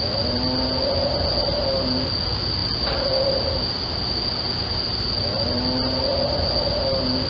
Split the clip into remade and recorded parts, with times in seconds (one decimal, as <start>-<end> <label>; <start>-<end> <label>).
0.0-7.3 recorded